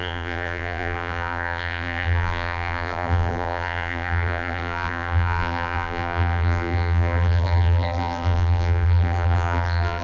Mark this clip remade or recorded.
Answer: remade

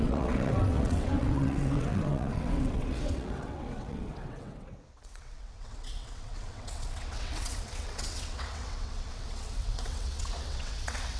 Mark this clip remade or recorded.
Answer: remade